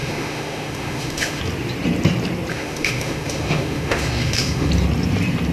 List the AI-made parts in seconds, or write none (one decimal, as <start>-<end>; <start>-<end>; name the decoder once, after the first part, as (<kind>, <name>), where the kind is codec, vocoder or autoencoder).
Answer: 0.0-1.4 (autoencoder, DAC-VAE); 2.5-4.7